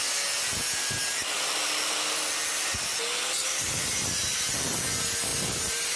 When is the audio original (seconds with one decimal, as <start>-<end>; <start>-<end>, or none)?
0.0-3.8; 4.4-5.3